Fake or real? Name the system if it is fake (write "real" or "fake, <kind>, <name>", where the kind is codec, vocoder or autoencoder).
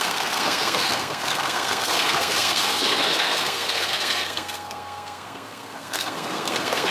fake, codec, SNAC